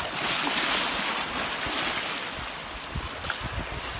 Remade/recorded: recorded